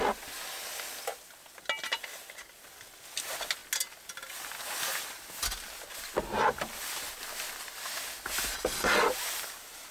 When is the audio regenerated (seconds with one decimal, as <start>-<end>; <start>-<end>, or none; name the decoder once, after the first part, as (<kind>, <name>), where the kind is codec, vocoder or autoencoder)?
none